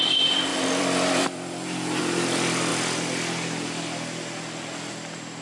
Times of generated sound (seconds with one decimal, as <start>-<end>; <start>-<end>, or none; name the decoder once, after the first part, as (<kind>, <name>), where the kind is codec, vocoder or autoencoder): 0.0-2.7 (vocoder, BigVGAN v2)